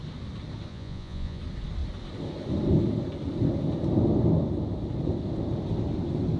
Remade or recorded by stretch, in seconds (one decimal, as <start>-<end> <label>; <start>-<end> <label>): 0.0-0.7 recorded; 0.7-1.4 remade; 1.4-6.4 recorded